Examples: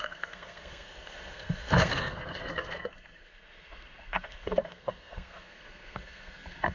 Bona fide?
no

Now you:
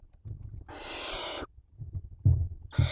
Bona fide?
yes